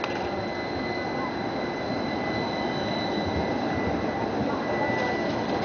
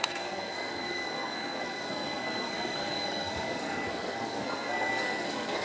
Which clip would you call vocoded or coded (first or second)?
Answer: second